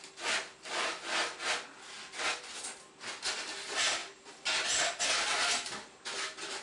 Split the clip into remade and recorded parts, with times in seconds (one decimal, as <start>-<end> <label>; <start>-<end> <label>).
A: 0.0-6.6 recorded